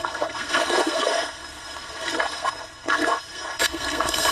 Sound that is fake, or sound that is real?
fake